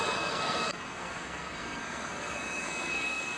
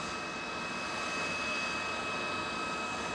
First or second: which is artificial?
first